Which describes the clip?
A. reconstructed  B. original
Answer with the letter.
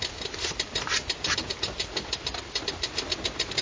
B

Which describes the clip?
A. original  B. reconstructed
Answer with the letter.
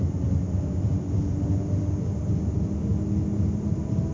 A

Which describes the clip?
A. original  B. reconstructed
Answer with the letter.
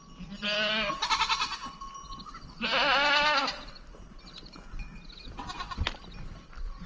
A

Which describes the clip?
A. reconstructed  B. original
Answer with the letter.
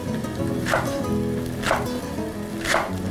B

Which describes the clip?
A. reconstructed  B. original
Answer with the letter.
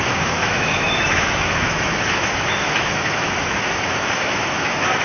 A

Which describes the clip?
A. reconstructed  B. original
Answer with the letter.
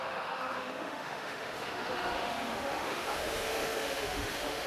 A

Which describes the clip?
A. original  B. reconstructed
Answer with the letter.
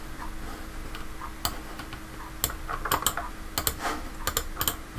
A